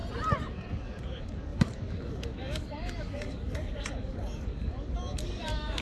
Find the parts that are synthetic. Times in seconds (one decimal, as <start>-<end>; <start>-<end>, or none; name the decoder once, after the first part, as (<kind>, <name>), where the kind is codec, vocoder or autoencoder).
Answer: 0.5-5.8 (codec, DAC)